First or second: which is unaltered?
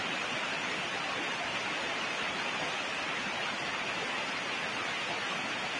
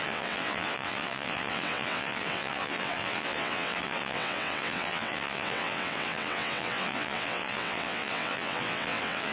first